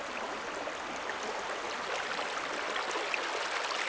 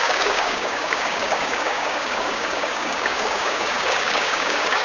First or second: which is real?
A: first